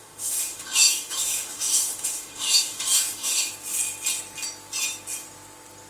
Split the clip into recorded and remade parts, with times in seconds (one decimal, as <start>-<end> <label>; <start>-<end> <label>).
0.0-3.5 remade; 3.5-5.9 recorded

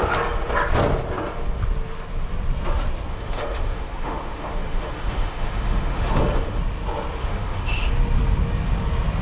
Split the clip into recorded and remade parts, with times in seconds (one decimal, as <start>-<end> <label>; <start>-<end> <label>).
0.0-3.1 recorded; 3.1-6.6 remade; 6.6-7.2 recorded; 7.2-7.9 remade; 7.9-9.2 recorded